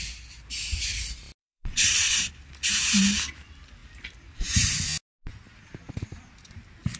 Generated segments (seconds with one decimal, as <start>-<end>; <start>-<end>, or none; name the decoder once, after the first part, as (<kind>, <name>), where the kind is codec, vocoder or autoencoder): 1.4-2.2 (vocoder, WaveNeXt)